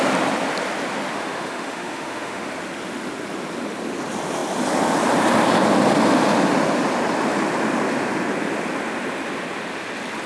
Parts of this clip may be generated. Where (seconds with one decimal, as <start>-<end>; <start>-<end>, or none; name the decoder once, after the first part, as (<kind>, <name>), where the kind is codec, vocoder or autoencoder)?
1.1-2.5 (autoencoder, DAC-VAE)